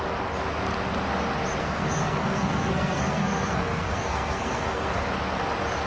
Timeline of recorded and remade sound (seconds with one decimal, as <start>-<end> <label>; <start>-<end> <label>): 0.0-1.6 recorded; 1.6-5.1 remade; 5.1-5.9 recorded